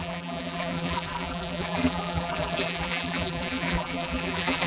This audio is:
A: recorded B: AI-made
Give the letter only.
B